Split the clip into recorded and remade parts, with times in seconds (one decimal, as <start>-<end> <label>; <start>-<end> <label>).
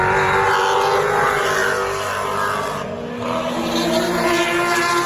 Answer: 0.0-5.1 recorded